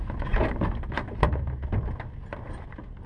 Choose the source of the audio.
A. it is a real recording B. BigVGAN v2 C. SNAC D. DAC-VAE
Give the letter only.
A